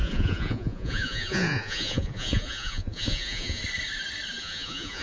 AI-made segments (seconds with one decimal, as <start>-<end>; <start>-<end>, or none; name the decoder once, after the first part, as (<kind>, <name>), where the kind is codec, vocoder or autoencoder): 0.0-3.6 (vocoder, Vocos); 4.4-5.0